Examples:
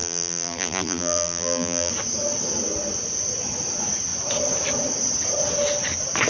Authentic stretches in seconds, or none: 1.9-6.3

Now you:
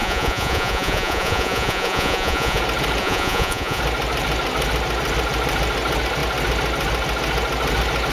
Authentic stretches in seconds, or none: 2.6-3.0; 3.8-8.1

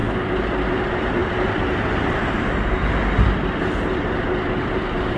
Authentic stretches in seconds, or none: 0.0-0.7; 3.0-4.7

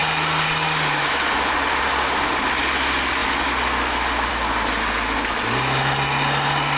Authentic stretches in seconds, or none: 0.0-6.8

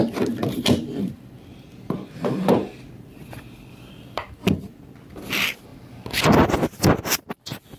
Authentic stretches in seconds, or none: 0.0-0.4; 5.0-5.7